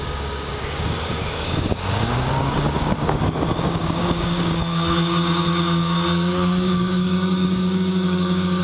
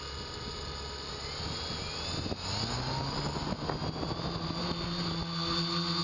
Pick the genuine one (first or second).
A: second